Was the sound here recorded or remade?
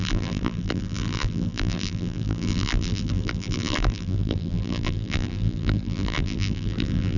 remade